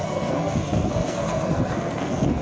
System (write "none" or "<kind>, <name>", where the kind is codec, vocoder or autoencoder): codec, SNAC